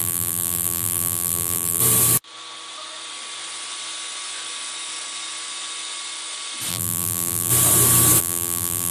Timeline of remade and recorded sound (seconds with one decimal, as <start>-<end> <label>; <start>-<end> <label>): 0.0-1.8 remade; 1.8-6.7 recorded; 6.7-7.5 remade; 7.5-8.2 recorded; 8.2-8.9 remade